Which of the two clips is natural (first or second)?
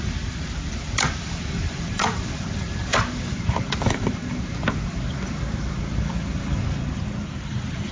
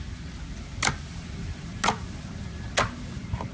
second